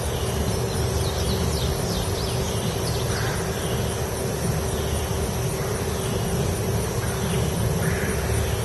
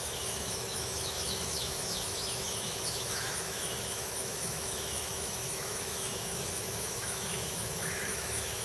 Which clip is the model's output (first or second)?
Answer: second